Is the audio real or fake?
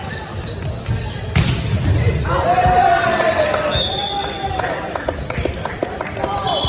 fake